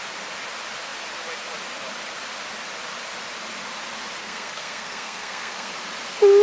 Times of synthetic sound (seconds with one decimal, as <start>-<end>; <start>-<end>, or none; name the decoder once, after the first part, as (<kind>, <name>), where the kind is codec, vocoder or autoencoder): 4.2-5.7 (codec, SNAC)